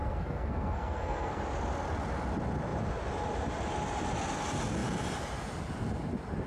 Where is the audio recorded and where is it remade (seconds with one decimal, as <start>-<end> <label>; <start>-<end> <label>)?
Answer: 0.0-1.4 remade; 1.4-6.5 recorded